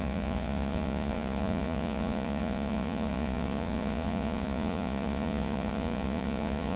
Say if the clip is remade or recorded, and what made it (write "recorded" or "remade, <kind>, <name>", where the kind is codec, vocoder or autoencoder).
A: remade, vocoder, Vocos